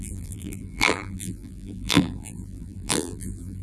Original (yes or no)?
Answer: no